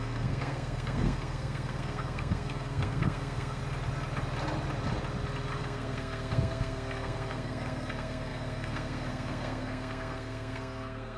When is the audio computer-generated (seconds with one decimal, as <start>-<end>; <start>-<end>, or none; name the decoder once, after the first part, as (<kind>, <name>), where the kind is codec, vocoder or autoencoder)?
0.0-3.6 (codec, SNAC); 5.6-11.2